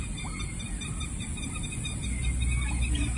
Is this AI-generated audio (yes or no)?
no